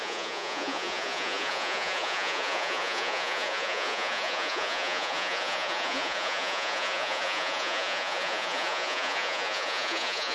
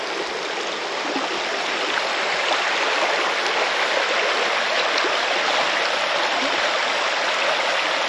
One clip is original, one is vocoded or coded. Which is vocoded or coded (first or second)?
first